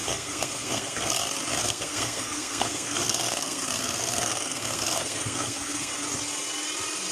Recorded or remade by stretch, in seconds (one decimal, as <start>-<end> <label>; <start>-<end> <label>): 0.0-1.2 remade; 1.2-1.6 recorded; 1.6-5.9 remade; 5.9-7.1 recorded